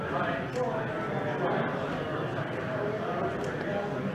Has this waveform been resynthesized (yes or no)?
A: no